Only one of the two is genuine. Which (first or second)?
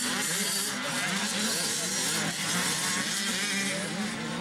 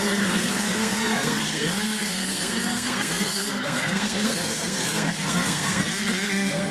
first